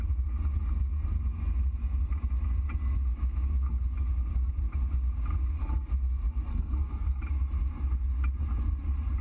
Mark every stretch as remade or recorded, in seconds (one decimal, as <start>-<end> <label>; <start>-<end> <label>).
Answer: 0.0-6.5 recorded; 6.5-7.2 remade; 7.2-9.2 recorded